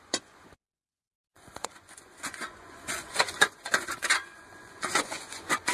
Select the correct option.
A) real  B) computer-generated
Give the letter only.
B